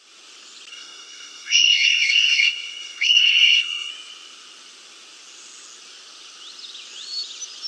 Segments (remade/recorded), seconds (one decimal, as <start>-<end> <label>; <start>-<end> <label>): 0.0-0.7 recorded; 0.7-3.9 remade; 3.9-7.7 recorded